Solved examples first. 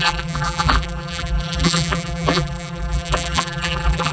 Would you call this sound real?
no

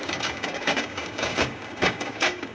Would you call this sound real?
no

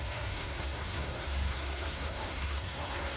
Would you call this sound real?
no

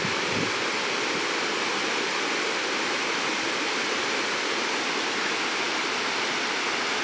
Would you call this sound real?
yes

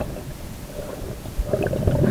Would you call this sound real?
yes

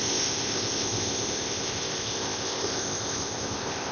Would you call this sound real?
no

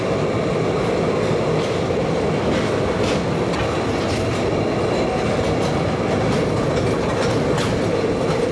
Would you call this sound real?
yes